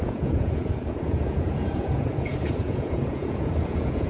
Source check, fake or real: fake